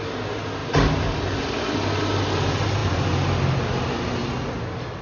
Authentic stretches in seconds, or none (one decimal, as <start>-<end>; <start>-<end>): 0.0-5.0